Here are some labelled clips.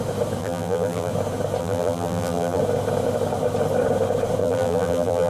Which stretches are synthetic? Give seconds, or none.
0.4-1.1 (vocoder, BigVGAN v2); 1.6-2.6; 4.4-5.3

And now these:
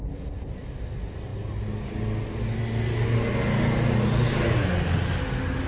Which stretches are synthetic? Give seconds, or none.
none

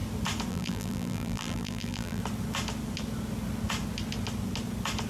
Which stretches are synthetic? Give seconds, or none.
0.5-2.2 (vocoder, BigVGAN v2)

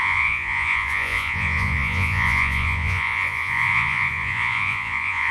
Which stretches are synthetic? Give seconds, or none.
0.0-5.3 (vocoder, Vocos)

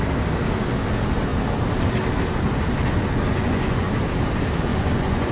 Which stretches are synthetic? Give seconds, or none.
3.3-3.9 (vocoder, Vocos); 4.7-5.3